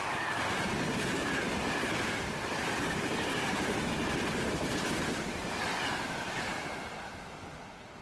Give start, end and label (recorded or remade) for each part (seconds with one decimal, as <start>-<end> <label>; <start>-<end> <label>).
0.0-6.5 remade; 6.5-8.0 recorded